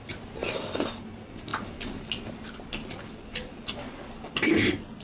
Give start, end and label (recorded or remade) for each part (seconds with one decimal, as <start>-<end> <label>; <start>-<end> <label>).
0.0-5.0 recorded